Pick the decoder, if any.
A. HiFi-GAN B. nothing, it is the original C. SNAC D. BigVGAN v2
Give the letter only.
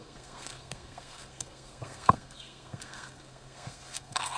C